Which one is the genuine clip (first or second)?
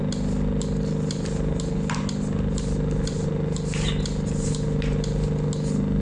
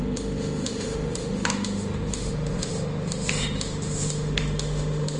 first